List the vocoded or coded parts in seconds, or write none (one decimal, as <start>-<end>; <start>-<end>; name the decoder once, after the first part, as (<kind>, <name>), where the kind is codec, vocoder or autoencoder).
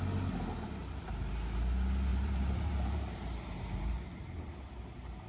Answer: 0.8-1.4 (vocoder, BigVGAN v2); 2.1-3.9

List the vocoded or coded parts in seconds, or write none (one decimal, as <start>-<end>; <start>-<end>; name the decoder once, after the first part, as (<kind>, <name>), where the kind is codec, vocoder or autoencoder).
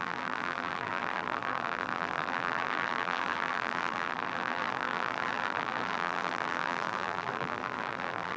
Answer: 0.0-8.4 (vocoder, BigVGAN v2)